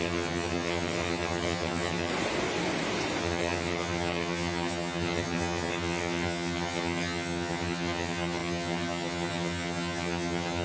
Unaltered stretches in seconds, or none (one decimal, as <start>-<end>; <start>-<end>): 2.1-3.2